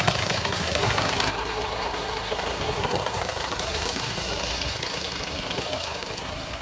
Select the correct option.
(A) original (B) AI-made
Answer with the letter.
B